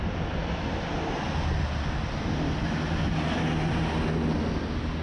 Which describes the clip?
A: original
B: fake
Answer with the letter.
A